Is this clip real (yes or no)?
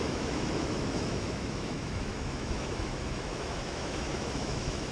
no